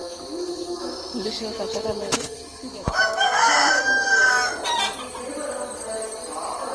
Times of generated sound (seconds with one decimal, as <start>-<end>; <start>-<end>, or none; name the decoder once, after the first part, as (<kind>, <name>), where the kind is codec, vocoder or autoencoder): 0.0-3.7 (autoencoder, DAC-VAE)